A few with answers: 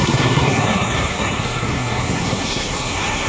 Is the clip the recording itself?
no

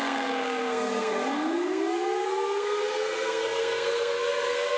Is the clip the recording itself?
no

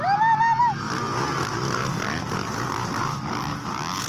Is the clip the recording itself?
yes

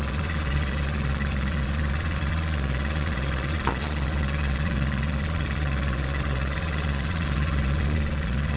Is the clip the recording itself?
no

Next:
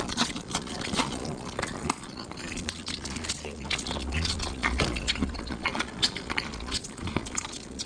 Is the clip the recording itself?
no